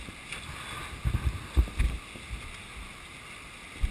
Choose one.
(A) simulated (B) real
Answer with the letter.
B